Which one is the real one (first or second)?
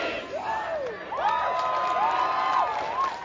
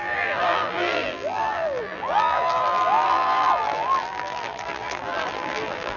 first